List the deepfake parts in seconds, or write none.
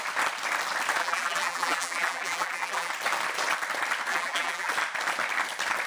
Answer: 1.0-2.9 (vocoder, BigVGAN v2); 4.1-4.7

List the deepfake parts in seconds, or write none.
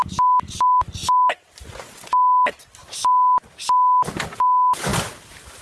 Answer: none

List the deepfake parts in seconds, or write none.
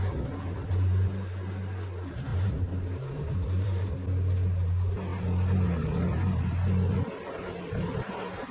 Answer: 2.3-3.9 (vocoder, BigVGAN v2)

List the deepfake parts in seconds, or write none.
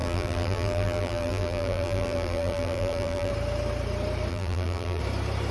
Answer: 0.0-3.3 (vocoder, BigVGAN v2); 4.3-5.0